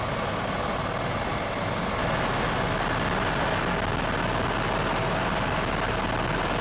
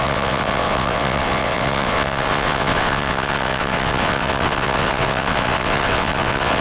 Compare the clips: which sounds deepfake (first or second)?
second